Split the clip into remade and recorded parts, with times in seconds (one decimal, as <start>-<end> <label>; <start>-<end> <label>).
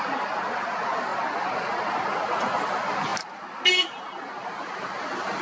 0.0-3.1 recorded; 3.1-4.7 remade; 4.7-5.4 recorded